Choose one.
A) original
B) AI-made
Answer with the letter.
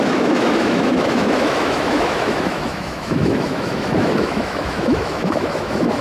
B